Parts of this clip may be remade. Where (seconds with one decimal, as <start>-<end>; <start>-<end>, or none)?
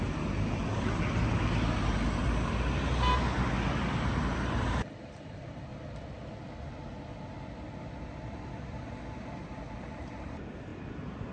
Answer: 0.0-0.6; 4.0-5.7; 9.7-11.3